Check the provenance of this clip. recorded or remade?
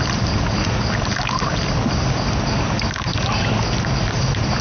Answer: recorded